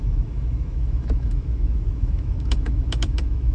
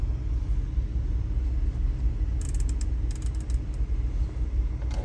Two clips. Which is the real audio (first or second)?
second